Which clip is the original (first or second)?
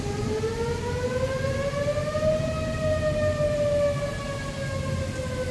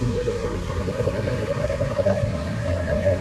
first